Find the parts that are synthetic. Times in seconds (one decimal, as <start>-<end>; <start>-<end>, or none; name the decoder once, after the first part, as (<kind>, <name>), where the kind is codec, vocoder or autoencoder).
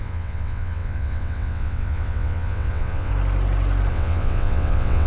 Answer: 0.0-3.1 (vocoder, WaveNeXt); 3.9-5.1